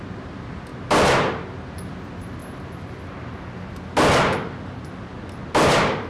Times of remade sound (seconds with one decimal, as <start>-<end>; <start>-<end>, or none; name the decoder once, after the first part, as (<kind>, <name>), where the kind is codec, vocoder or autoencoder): none